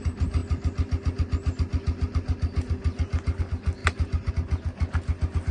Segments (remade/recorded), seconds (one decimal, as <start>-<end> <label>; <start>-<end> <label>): 0.0-5.5 recorded